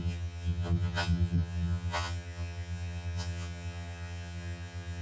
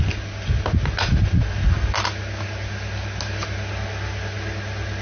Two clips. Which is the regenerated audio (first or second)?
first